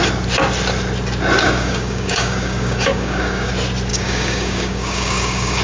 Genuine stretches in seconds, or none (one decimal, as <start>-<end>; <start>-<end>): 0.0-1.4; 3.5-3.9